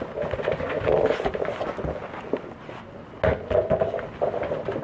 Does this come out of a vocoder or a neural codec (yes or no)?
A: no